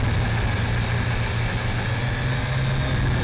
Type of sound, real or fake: real